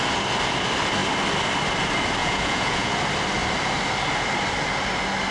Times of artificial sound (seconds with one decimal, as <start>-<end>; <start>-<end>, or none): 2.2-2.9